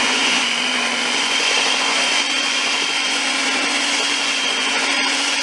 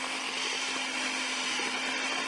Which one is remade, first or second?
first